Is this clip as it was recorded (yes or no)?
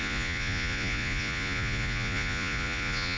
no